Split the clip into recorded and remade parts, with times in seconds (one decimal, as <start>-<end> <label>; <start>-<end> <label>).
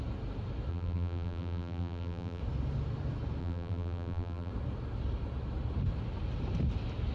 0.0-0.7 recorded; 0.7-2.4 remade; 2.4-3.4 recorded; 3.4-4.5 remade; 4.5-7.1 recorded